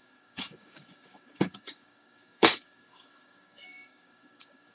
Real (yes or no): no